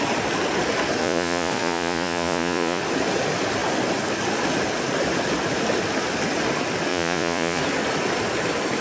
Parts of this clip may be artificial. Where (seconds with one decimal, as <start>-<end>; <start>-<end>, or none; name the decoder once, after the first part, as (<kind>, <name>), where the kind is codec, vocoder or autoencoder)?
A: 1.0-2.8 (vocoder, Vocos); 6.9-7.6